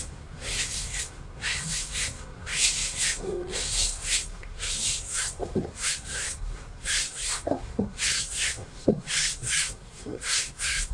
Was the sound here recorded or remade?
remade